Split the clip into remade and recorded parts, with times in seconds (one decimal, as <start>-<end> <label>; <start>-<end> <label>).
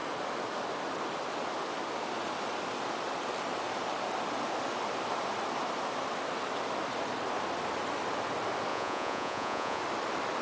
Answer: 0.0-8.7 recorded; 8.7-9.8 remade; 9.8-10.4 recorded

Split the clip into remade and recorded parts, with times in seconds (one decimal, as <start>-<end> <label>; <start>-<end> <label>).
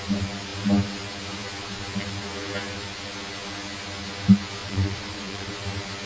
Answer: 0.0-4.6 recorded; 4.6-5.5 remade; 5.5-6.1 recorded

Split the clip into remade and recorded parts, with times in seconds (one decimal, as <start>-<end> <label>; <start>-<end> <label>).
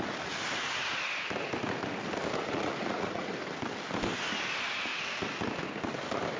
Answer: 0.0-2.4 recorded; 2.4-3.3 remade; 3.3-6.4 recorded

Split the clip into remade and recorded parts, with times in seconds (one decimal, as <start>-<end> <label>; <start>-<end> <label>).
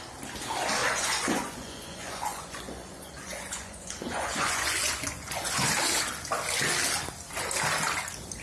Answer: 0.0-0.8 recorded; 0.8-5.7 remade; 5.7-8.4 recorded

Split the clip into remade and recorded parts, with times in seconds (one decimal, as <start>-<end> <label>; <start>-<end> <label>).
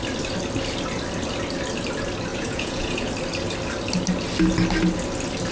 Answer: 0.0-2.3 recorded; 2.3-3.1 remade; 3.1-5.5 recorded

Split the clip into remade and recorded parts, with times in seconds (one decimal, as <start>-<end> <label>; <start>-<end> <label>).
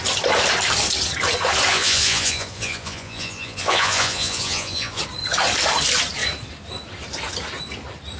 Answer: 0.0-1.7 recorded; 1.7-5.0 remade; 5.0-8.2 recorded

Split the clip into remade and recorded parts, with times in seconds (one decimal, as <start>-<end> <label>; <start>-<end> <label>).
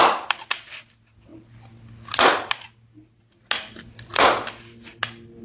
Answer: 0.0-5.4 recorded